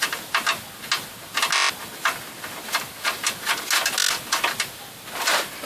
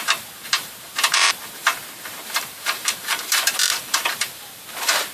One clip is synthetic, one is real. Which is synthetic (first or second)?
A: second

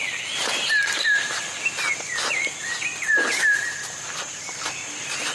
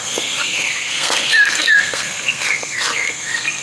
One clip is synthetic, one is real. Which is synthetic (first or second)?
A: second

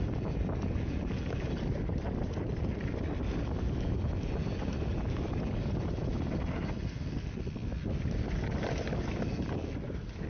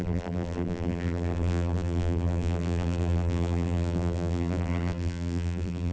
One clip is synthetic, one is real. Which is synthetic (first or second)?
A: second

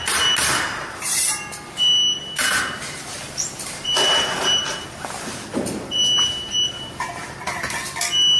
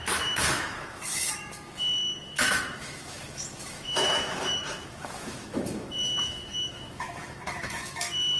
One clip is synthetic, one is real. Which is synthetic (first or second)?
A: second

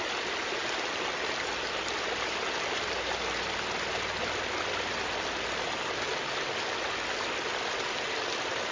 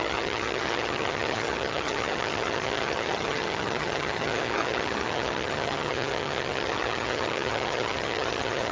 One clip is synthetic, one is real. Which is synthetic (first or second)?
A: second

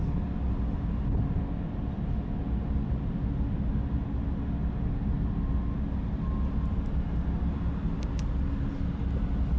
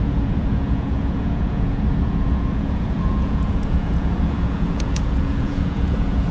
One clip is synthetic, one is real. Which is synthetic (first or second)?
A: second